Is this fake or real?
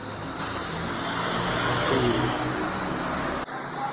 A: real